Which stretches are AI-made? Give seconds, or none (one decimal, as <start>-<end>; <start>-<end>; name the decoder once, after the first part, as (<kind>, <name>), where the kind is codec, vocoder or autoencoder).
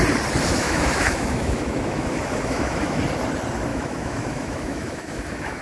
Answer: 0.5-3.0 (autoencoder, DAC-VAE); 3.7-5.6